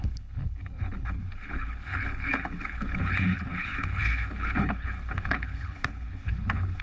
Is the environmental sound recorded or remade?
remade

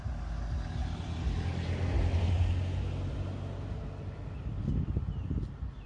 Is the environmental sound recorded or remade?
recorded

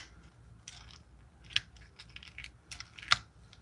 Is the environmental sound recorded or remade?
recorded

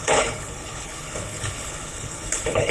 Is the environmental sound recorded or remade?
remade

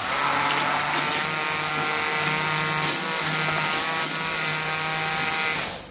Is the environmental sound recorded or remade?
recorded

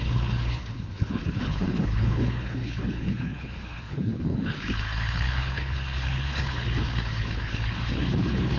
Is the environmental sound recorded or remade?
remade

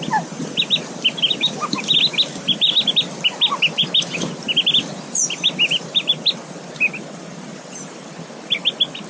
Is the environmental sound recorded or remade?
recorded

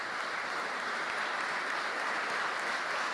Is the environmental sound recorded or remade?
recorded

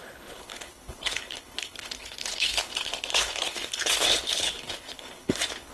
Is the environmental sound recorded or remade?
remade